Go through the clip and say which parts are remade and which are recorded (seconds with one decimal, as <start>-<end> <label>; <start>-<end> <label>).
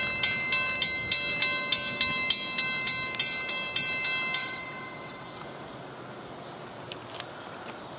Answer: 0.0-4.4 recorded; 4.4-5.4 remade; 5.4-8.0 recorded